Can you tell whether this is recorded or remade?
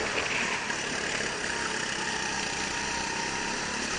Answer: recorded